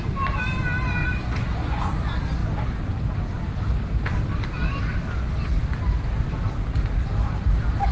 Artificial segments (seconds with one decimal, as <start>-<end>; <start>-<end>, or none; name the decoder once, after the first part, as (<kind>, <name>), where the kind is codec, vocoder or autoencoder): 1.0-1.9 (vocoder, Vocos)